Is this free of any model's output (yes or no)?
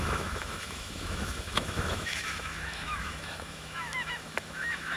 no